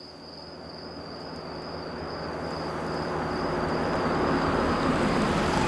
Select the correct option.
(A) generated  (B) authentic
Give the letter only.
B